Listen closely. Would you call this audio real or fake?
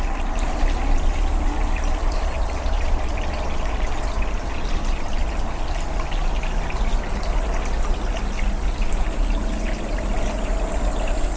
real